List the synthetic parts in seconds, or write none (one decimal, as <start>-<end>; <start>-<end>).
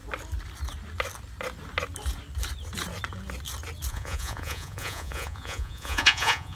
3.9-6.6